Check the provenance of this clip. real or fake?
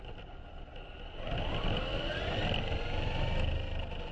real